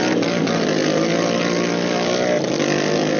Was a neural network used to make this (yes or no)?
no